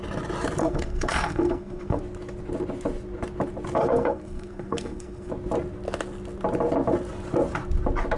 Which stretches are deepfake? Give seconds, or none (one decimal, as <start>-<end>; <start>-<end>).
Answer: 0.6-2.0; 3.8-5.3